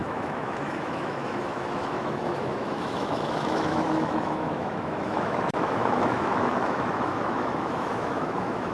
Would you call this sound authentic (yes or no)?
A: no